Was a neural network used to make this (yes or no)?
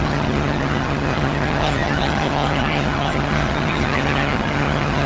yes